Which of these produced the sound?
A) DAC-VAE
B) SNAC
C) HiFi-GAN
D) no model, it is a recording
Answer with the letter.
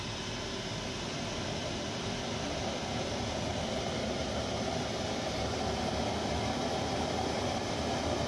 D